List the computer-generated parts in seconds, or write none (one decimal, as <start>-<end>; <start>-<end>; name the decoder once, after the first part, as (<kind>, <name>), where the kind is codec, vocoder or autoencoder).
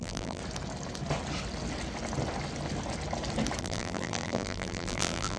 0.0-0.4 (vocoder, BigVGAN v2); 3.6-5.4